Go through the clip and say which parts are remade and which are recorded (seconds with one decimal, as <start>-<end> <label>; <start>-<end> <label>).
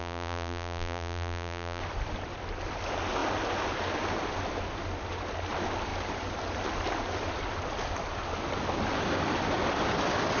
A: 0.0-1.8 remade; 1.8-10.4 recorded